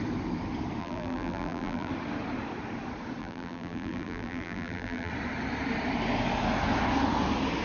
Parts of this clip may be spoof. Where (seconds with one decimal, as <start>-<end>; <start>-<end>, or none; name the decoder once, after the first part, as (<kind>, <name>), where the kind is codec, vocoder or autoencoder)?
0.8-1.9 (vocoder, BigVGAN v2); 3.2-5.1